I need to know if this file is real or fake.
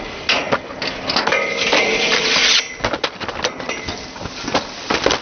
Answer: real